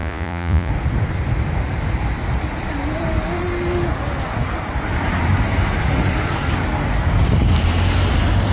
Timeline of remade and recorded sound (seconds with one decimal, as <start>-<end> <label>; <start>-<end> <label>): 0.0-0.7 remade; 0.7-8.5 recorded